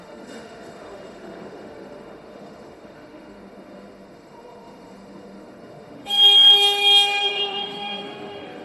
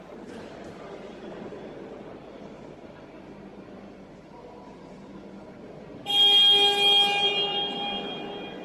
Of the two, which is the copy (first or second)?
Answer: first